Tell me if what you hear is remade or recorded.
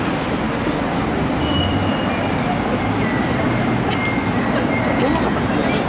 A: recorded